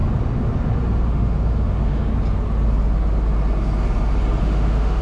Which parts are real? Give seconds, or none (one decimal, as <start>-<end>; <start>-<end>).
0.0-1.1; 2.1-4.4